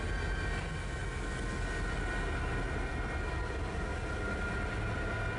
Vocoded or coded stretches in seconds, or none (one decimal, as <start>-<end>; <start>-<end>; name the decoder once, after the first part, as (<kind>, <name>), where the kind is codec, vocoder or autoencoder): none